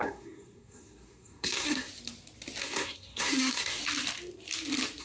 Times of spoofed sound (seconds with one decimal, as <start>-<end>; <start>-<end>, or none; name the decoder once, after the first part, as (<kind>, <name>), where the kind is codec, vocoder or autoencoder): 0.0-1.9 (codec, SNAC); 2.6-3.8